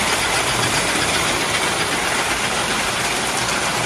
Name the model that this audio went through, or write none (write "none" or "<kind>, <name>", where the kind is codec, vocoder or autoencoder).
none